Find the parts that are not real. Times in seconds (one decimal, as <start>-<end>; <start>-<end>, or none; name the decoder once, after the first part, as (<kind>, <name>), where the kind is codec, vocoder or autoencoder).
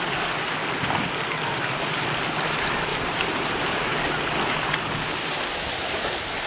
2.9-3.8 (vocoder, BigVGAN v2)